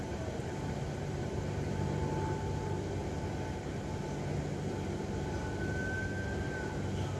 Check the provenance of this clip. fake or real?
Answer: real